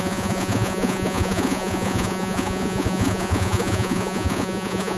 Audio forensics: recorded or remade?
remade